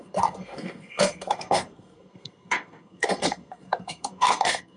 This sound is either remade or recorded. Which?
remade